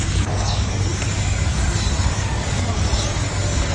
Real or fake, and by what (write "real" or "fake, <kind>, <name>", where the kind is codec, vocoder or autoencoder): fake, codec, DAC